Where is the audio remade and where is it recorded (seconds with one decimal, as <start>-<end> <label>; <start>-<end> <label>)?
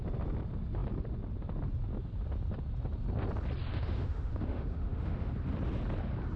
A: 0.0-3.7 recorded; 3.7-5.3 remade; 5.3-6.4 recorded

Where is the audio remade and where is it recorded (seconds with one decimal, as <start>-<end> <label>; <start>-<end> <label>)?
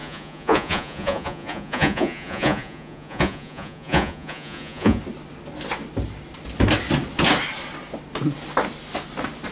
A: 0.0-5.0 remade; 5.0-9.5 recorded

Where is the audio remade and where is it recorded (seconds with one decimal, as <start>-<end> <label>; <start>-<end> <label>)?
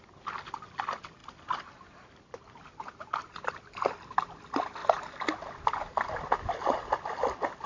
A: 0.0-7.7 recorded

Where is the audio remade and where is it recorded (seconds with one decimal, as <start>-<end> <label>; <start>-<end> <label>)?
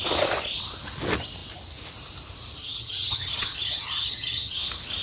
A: 0.0-2.6 recorded; 2.6-4.6 remade; 4.6-5.0 recorded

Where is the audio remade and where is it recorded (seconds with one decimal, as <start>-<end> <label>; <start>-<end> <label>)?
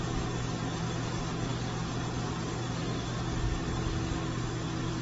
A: 0.0-5.0 recorded